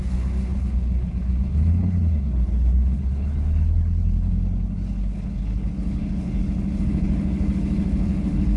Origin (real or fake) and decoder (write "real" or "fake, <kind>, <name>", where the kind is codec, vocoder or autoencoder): fake, codec, HILCodec